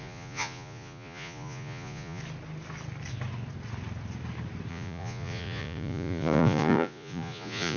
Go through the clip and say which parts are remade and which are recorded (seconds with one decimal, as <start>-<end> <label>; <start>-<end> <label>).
0.0-2.2 remade; 2.2-4.7 recorded; 4.7-7.8 remade